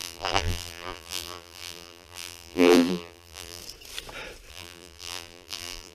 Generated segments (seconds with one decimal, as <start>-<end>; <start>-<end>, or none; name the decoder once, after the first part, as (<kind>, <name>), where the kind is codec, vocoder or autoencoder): 0.0-3.6 (vocoder, BigVGAN v2); 4.5-5.9